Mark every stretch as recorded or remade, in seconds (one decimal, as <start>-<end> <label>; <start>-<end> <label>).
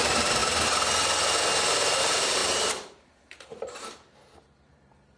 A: 0.0-0.4 remade; 0.4-2.0 recorded; 2.0-5.2 remade